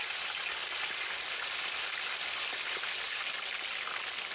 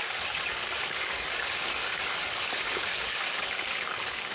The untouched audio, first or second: first